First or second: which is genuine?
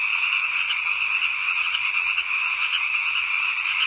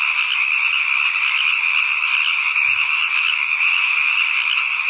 second